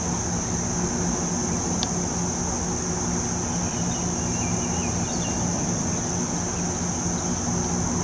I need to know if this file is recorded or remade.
recorded